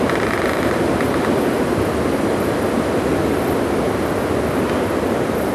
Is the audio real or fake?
real